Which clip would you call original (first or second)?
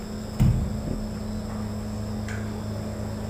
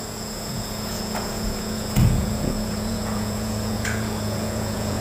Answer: first